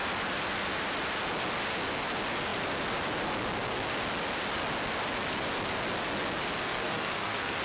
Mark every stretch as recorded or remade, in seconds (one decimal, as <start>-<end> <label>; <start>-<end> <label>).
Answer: 0.0-6.7 recorded; 6.7-7.6 remade